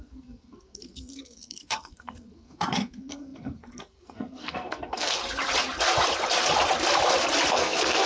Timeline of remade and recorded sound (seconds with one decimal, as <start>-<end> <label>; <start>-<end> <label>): 0.0-5.2 remade; 5.2-7.5 recorded; 7.5-8.1 remade